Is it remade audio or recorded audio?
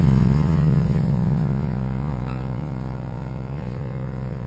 remade